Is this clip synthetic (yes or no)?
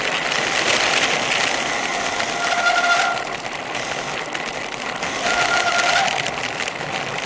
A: no